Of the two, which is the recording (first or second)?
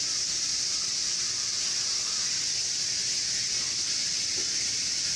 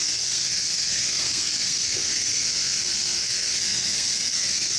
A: first